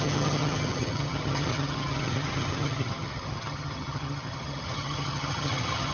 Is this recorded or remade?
remade